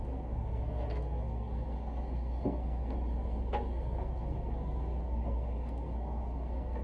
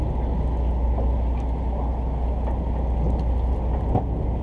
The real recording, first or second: second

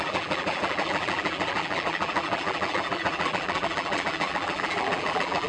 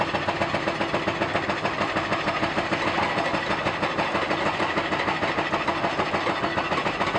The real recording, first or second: second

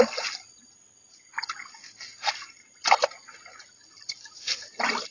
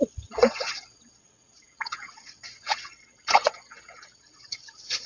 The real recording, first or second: first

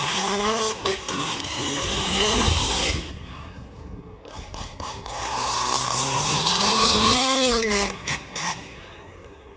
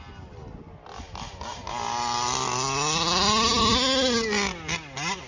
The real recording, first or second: second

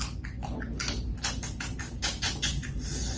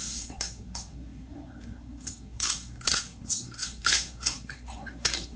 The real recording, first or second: first